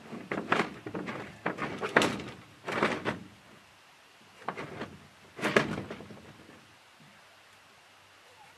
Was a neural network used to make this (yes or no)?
no